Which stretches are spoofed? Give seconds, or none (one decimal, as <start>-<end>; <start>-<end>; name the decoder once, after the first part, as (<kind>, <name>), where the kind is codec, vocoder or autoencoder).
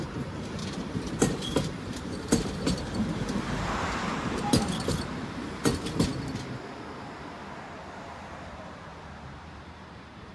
0.0-6.1 (vocoder, BigVGAN v2); 8.0-8.9; 9.5-10.3